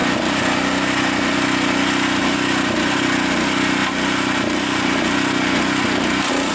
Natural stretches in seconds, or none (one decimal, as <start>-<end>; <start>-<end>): 0.0-6.5